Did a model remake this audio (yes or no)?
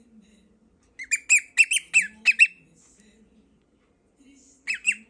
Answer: no